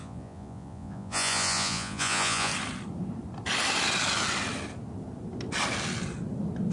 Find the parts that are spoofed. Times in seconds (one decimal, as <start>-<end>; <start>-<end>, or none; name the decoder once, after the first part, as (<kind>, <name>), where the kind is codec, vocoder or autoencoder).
0.0-2.5 (vocoder, Vocos)